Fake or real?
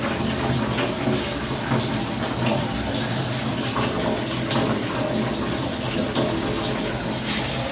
real